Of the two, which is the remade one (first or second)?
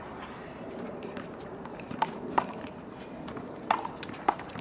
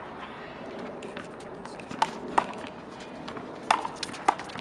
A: first